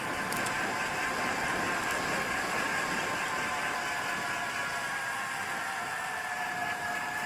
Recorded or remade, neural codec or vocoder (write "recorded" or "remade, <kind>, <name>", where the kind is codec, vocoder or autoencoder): recorded